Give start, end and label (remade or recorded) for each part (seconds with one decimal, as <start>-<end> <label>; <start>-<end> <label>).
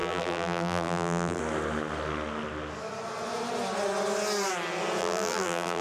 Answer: 0.0-1.4 remade; 1.4-5.0 recorded; 5.0-5.8 remade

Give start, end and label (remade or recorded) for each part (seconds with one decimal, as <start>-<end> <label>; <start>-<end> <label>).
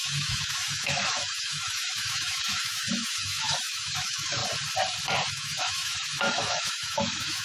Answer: 0.0-4.4 remade; 4.4-5.3 recorded; 5.3-7.4 remade